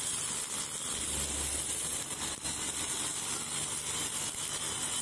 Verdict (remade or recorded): recorded